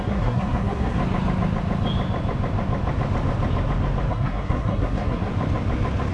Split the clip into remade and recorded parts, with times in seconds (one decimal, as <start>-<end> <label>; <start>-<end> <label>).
0.0-1.0 remade; 1.0-4.1 recorded; 4.1-5.3 remade; 5.3-6.1 recorded